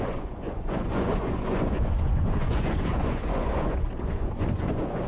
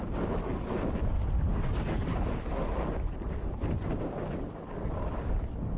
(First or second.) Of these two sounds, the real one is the second